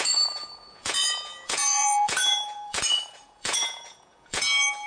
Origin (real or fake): fake